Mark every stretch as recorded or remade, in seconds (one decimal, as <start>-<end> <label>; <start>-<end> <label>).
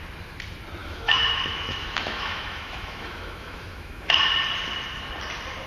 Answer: 0.0-0.8 recorded; 0.8-4.2 remade; 4.2-5.7 recorded